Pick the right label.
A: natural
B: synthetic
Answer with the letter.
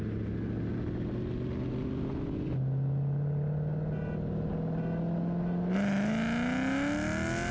A